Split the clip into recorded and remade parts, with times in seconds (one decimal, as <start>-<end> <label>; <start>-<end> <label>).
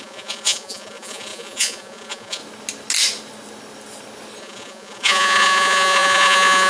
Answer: 0.0-2.4 remade; 2.4-4.4 recorded; 4.4-6.7 remade